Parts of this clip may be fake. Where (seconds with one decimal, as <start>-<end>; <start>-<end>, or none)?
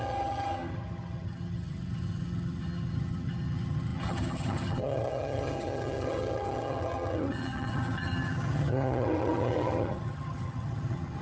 0.0-11.2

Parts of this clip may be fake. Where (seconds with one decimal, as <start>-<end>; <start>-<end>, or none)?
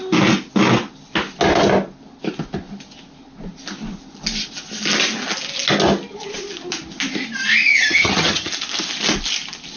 7.7-8.5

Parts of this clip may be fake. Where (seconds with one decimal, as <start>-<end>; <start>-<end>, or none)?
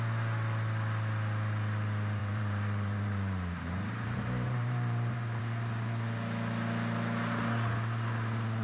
2.2-5.4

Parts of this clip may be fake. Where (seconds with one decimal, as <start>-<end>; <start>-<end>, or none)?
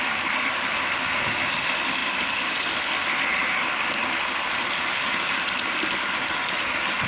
none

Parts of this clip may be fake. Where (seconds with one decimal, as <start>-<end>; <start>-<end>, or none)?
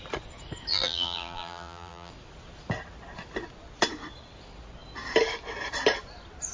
0.7-2.1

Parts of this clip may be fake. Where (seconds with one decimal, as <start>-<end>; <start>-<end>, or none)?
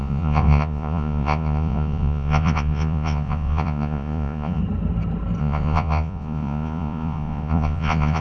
0.0-4.6; 5.4-8.2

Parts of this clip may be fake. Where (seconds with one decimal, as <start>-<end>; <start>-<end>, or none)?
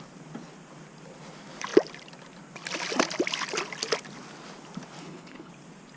5.0-5.5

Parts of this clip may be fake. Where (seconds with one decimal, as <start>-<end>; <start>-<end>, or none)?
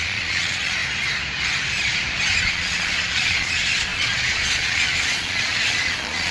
0.0-0.8; 2.4-6.3